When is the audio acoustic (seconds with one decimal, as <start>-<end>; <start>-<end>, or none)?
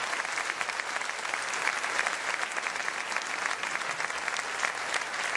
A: 0.0-5.4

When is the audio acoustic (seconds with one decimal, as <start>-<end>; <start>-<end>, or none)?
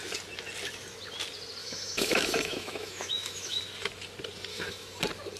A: 0.0-1.6; 3.6-4.5; 5.0-5.4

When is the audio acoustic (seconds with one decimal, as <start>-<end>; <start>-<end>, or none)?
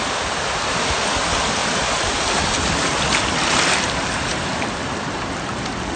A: 0.0-6.0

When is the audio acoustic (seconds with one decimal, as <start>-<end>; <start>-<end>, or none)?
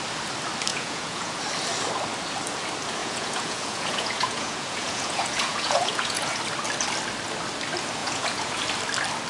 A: 0.0-0.7; 1.4-3.0; 6.4-8.0; 8.6-9.3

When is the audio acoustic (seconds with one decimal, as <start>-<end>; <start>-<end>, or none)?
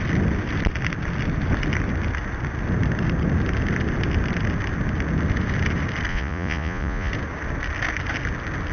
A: 0.0-6.1; 7.1-8.7